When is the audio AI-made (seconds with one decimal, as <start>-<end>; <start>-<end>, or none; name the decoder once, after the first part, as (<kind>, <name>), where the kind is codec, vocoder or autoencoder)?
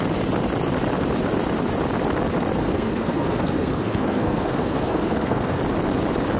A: 2.6-5.6 (codec, SNAC)